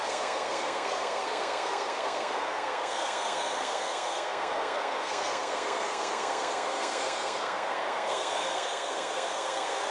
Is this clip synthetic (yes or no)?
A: yes